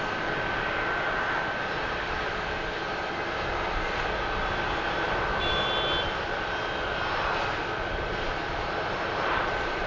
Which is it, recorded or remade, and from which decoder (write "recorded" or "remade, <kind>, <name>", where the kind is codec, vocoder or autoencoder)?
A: recorded